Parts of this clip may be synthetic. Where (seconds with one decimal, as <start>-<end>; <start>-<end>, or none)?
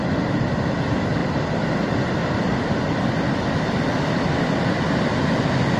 1.2-1.7; 2.2-4.2